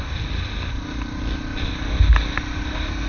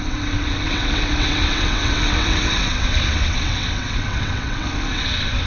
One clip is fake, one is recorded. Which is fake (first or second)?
second